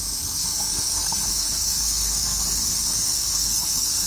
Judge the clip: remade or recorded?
remade